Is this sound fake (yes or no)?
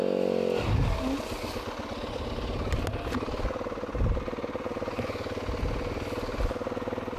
no